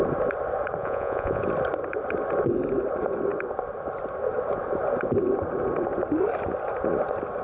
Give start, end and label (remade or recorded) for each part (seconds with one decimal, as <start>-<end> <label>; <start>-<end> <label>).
0.0-0.8 recorded; 0.8-1.4 remade; 1.4-7.4 recorded